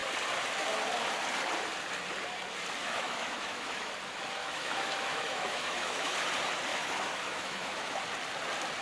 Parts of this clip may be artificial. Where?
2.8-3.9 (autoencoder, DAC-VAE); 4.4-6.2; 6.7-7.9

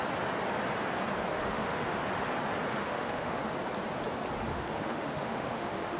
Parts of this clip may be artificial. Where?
1.3-2.0 (autoencoder, DAC-VAE); 2.8-3.5; 4.5-6.0

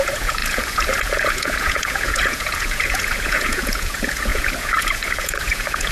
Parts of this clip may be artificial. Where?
0.0-5.9 (vocoder, Vocos)

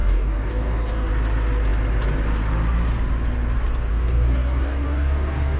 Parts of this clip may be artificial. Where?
0.0-1.1 (codec, DAC); 3.9-5.6

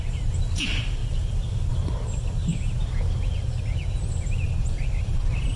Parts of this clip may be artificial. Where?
1.0-1.7 (vocoder, BigVGAN v2); 4.6-5.6

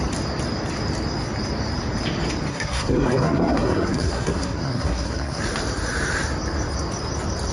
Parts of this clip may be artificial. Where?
2.5-5.4 (codec, SNAC)